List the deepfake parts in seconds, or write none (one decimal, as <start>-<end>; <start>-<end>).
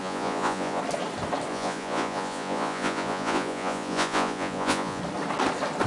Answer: 0.0-0.8; 1.5-5.0